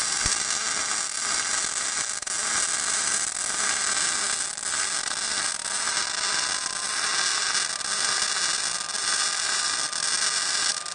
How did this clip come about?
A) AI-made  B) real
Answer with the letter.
B